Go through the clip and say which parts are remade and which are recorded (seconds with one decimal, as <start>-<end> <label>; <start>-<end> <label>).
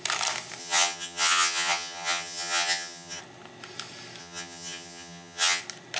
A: 0.0-0.6 recorded; 0.6-3.2 remade; 3.2-4.2 recorded; 4.2-5.6 remade; 5.6-6.0 recorded